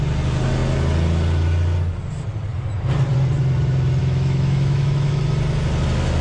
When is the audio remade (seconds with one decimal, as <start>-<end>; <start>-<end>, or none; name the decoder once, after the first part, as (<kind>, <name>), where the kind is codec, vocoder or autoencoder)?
4.0-5.2 (autoencoder, DAC-VAE)